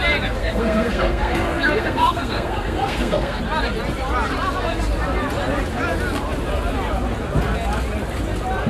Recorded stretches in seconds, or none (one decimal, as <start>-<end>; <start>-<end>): 0.0-0.4; 3.4-8.7